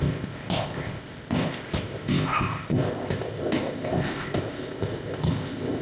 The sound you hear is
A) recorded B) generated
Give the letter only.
B